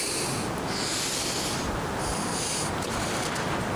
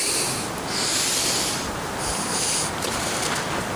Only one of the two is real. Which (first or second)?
first